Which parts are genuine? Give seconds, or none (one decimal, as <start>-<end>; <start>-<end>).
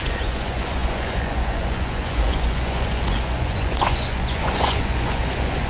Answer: none